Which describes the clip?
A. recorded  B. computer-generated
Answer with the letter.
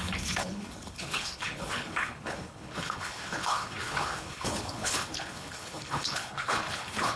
B